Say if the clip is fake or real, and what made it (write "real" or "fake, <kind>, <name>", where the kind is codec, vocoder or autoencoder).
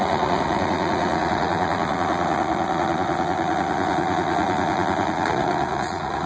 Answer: fake, vocoder, Vocos